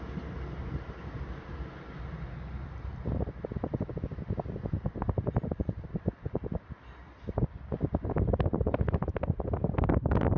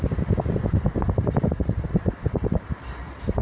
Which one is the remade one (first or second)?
second